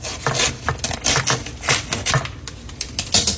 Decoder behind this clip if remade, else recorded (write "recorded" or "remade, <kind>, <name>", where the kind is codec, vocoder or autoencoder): recorded